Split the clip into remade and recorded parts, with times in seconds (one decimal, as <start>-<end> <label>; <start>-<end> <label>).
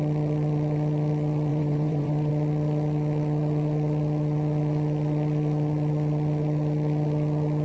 0.0-1.5 recorded; 1.5-2.3 remade; 2.3-7.6 recorded